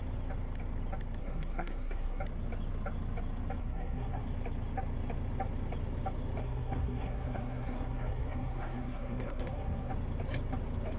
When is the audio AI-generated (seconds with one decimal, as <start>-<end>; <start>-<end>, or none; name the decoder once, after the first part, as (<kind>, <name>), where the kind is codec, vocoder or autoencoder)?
1.2-2.2 (codec, SNAC); 3.6-4.2; 6.4-9.9